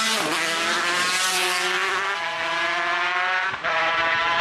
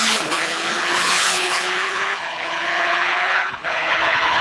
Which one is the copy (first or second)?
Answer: second